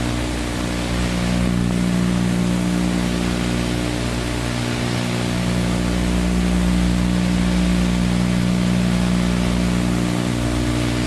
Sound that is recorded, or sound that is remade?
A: recorded